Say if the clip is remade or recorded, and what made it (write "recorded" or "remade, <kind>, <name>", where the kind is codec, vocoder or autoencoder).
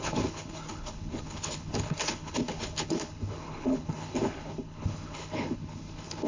remade, codec, HILCodec